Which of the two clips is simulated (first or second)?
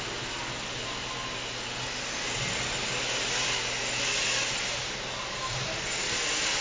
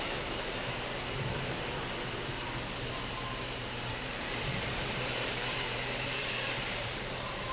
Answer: second